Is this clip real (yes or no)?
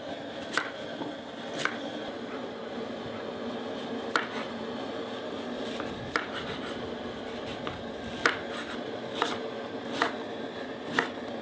yes